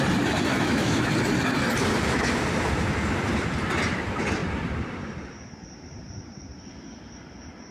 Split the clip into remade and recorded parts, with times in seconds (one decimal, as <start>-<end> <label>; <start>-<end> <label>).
0.0-0.5 recorded; 0.5-1.1 remade; 1.1-7.7 recorded